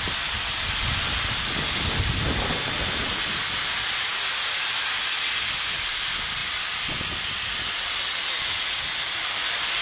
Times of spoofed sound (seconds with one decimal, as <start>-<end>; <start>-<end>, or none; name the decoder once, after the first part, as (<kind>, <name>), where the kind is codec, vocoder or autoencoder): none